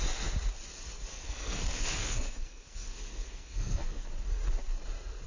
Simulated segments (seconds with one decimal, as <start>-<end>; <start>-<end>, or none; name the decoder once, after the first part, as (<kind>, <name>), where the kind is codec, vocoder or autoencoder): 1.1-4.1 (codec, SNAC)